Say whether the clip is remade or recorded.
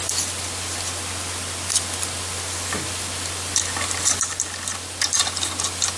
recorded